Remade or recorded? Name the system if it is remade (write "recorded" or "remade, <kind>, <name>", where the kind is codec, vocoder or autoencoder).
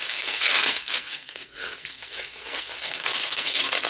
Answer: remade, codec, SNAC